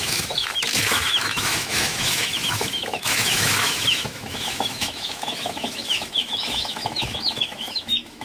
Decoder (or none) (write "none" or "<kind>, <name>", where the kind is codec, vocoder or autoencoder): autoencoder, DAC-VAE